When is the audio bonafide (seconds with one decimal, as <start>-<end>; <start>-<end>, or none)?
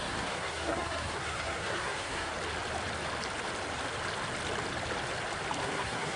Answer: 2.3-5.6